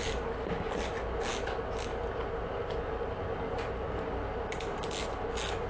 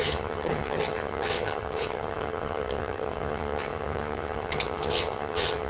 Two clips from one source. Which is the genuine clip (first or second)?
first